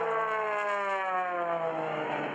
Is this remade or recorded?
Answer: recorded